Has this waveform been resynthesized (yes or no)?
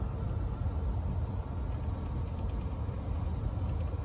no